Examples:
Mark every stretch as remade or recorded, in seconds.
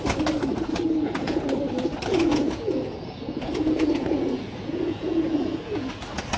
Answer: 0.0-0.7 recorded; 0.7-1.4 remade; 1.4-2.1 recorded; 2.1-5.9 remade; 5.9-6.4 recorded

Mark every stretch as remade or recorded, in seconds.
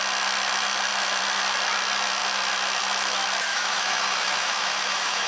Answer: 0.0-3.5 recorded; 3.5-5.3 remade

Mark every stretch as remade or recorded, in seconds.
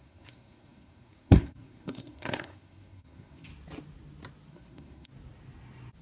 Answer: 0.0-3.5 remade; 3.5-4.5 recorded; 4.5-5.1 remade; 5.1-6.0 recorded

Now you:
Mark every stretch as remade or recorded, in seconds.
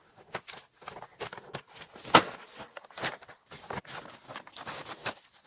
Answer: 0.0-5.5 recorded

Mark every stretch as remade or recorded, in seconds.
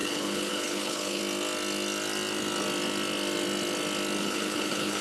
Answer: 0.0-1.2 remade; 1.2-4.2 recorded; 4.2-5.0 remade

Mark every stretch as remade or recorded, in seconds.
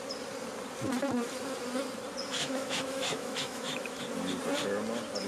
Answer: 0.0-2.4 recorded; 2.4-4.0 remade; 4.0-5.3 recorded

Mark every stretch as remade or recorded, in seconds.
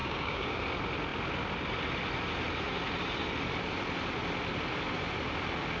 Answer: 0.0-0.6 remade; 0.6-5.8 recorded